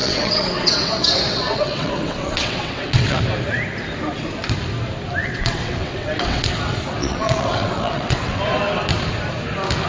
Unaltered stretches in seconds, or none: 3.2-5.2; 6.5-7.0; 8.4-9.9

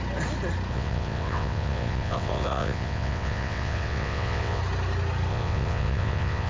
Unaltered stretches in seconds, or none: 0.0-0.7; 4.6-5.3

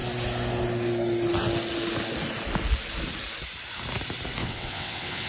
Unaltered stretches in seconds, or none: 0.0-4.4

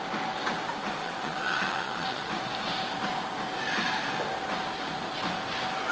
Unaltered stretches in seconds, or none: 0.0-1.0; 2.3-5.9

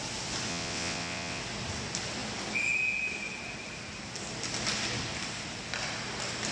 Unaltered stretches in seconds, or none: 0.0-0.5; 1.4-6.5